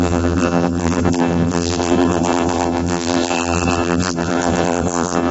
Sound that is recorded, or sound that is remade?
remade